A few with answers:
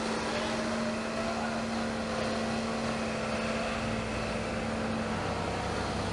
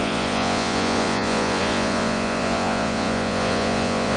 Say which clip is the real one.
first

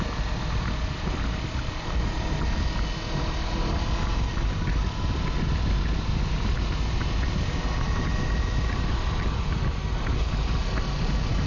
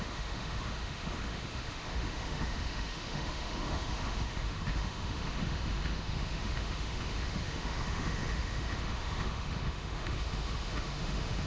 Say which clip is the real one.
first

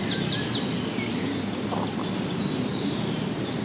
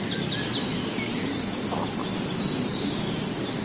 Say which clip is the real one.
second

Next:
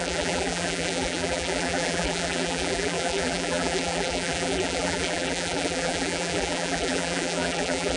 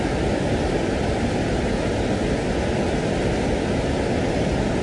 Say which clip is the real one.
second